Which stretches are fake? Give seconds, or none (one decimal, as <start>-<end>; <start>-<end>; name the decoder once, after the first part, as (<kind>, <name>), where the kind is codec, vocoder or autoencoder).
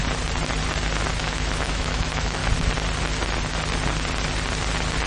1.2-2.4 (autoencoder, DAC-VAE)